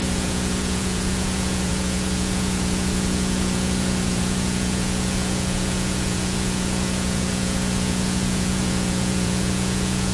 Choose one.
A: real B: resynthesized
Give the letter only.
B